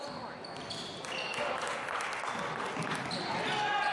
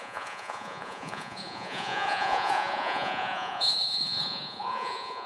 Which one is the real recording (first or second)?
first